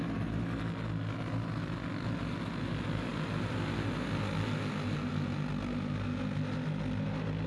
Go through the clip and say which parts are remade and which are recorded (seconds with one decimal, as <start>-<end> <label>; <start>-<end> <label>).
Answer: 0.0-7.5 recorded